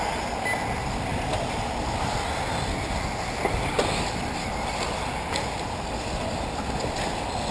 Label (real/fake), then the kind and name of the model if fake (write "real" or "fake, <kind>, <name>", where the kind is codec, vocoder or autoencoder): real